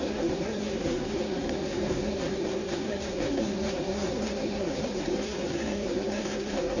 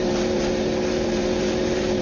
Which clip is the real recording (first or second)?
second